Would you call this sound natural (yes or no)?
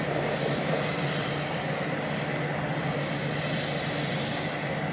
yes